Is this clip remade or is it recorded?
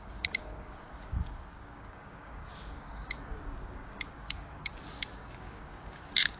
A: remade